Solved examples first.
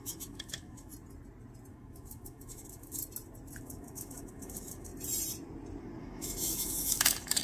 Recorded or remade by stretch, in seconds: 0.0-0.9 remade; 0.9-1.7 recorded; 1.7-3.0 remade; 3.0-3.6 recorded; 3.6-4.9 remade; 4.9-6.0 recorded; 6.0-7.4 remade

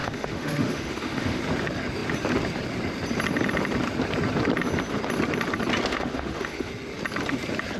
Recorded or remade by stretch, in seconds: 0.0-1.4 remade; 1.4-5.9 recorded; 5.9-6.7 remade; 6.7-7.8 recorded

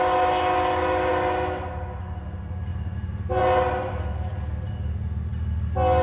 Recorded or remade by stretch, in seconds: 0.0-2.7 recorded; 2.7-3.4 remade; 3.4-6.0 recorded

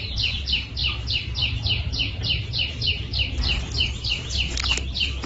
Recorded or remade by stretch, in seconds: 0.0-0.8 remade; 0.8-1.5 recorded; 1.5-3.1 remade; 3.1-5.3 recorded

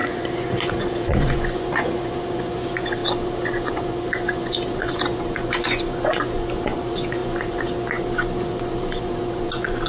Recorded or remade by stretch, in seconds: 0.0-9.9 remade

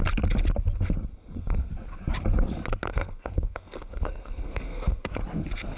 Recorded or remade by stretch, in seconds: 0.0-1.1 recorded; 1.1-1.7 remade; 1.7-2.9 recorded; 2.9-5.1 remade; 5.1-5.8 recorded

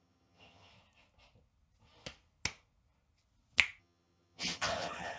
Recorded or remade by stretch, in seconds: 0.0-0.7 remade; 0.7-3.8 recorded; 3.8-5.2 remade